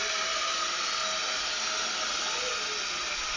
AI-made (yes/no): no